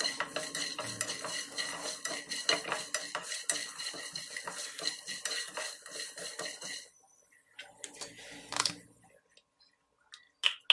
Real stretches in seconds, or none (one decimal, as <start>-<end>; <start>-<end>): 0.0-3.6; 8.7-10.7